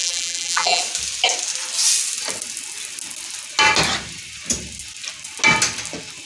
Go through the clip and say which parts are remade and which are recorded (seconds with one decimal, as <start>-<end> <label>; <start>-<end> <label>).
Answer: 0.0-0.8 remade; 0.8-6.3 recorded